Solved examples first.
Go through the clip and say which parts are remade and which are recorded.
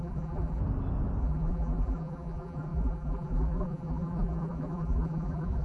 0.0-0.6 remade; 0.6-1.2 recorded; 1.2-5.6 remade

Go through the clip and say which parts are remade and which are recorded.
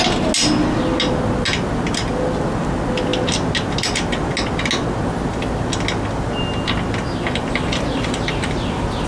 0.0-9.1 recorded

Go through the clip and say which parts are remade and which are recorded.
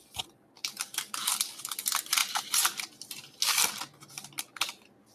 0.0-5.1 recorded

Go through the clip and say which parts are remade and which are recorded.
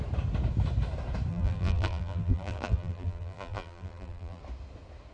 0.0-1.3 recorded; 1.3-4.4 remade; 4.4-5.1 recorded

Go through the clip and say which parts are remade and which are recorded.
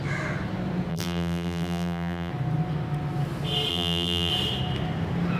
0.0-0.9 recorded; 0.9-2.3 remade; 2.3-3.7 recorded; 3.7-4.3 remade; 4.3-5.4 recorded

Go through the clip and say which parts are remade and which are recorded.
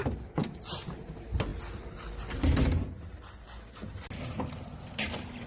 0.0-5.5 recorded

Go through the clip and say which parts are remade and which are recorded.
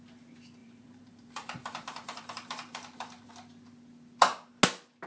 0.0-0.6 recorded; 0.6-3.3 remade; 3.3-5.1 recorded